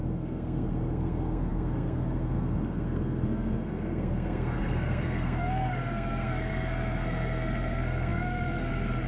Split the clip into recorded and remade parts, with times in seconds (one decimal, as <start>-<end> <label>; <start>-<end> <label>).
0.0-9.1 remade